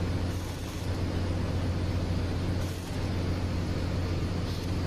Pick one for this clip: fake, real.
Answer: real